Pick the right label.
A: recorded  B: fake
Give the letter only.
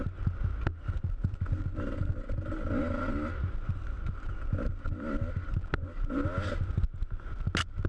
A